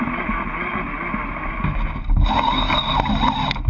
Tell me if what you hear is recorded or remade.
recorded